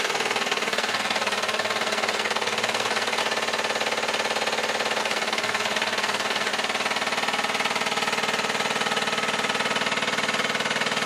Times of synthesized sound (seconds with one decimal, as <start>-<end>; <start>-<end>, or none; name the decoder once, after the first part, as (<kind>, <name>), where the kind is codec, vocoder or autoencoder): 0.0-3.2 (codec, SNAC); 5.0-6.5